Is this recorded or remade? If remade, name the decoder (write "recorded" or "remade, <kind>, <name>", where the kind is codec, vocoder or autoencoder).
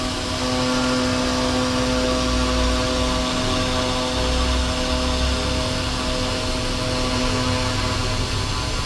recorded